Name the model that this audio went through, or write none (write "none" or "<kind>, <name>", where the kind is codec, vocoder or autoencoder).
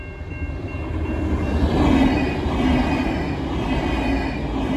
none